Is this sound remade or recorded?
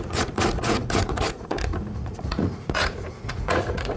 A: remade